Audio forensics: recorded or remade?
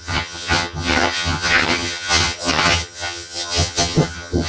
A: remade